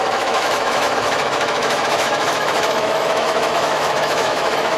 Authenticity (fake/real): fake